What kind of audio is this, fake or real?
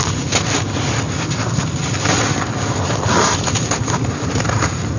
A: real